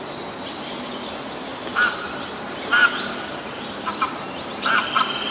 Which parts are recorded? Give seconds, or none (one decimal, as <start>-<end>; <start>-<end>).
0.0-1.5; 4.7-5.3